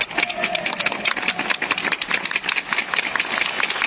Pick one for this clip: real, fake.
real